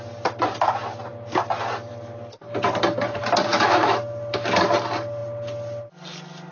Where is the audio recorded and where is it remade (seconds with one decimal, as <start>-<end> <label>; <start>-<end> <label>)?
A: 0.0-3.5 recorded; 3.5-4.0 remade; 4.0-6.5 recorded